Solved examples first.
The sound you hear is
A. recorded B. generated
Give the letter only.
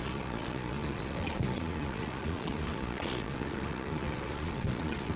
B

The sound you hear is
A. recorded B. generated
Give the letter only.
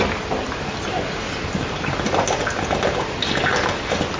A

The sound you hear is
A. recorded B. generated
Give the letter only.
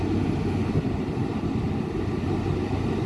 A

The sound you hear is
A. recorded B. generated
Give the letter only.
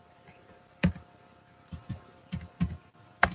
B